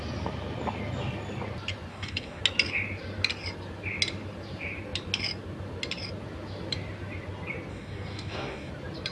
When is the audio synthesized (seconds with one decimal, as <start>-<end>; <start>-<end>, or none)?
1.9-2.4; 7.7-8.7